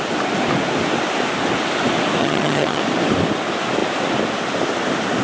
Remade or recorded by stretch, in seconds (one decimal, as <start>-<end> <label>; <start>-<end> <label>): 0.0-2.2 recorded; 2.2-2.8 remade; 2.8-5.2 recorded